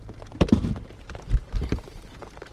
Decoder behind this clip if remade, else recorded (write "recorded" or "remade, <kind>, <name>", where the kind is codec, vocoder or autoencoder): remade, vocoder, BigVGAN v2